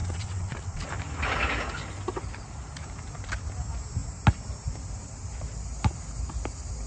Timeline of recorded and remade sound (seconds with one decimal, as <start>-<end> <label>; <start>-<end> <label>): 0.0-0.8 remade; 0.8-6.9 recorded